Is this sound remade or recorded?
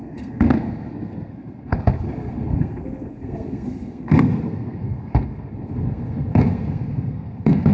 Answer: remade